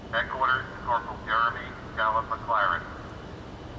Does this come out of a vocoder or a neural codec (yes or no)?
no